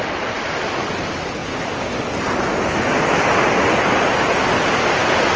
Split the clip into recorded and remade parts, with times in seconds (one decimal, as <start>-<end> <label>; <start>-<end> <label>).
0.0-5.4 recorded